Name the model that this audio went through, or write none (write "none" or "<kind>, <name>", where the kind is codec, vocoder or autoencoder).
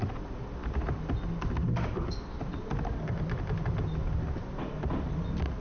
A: none